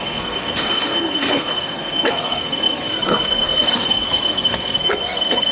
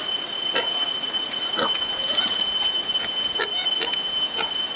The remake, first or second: first